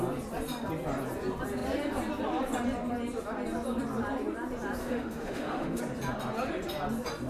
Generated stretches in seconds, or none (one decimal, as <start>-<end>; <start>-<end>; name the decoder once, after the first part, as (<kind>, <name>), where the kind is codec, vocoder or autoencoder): 4.8-5.8 (autoencoder, DAC-VAE)